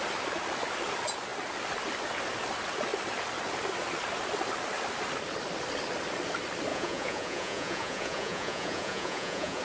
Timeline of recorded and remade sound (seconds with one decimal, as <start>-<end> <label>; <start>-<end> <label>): 0.0-6.7 recorded; 6.7-9.6 remade